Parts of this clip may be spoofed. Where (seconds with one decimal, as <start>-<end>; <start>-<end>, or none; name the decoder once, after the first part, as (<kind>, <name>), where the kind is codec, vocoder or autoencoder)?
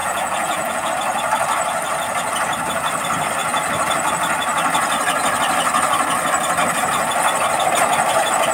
0.0-0.9 (vocoder, Vocos)